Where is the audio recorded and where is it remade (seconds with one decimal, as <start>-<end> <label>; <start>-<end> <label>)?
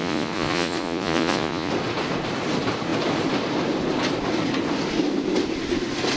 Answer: 0.0-1.7 remade; 1.7-6.2 recorded